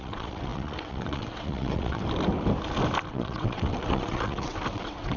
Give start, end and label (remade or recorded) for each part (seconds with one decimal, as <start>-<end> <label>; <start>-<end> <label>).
0.0-2.0 remade; 2.0-3.1 recorded; 3.1-5.2 remade

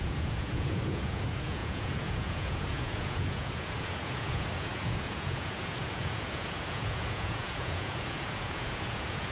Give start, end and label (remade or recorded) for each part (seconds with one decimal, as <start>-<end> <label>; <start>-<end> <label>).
0.0-9.3 remade